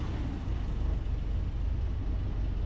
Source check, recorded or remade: recorded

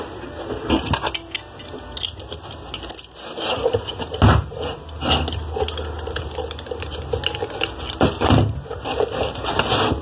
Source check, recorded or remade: recorded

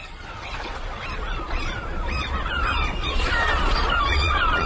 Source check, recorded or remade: remade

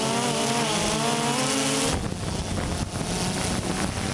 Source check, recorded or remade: recorded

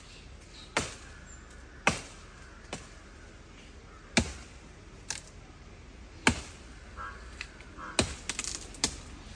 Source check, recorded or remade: recorded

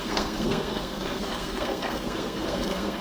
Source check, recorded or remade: remade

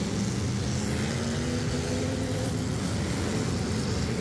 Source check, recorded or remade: recorded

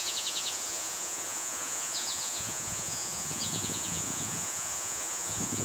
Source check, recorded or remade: remade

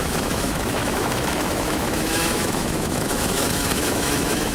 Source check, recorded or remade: remade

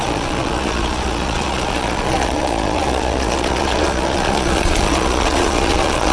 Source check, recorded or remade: remade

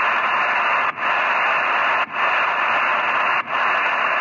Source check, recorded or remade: recorded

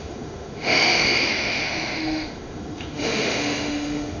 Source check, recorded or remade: remade